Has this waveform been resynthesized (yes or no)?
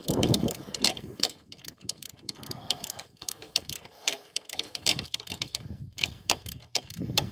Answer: yes